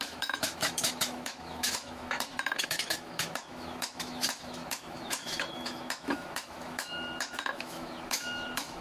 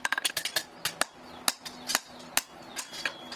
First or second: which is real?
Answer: second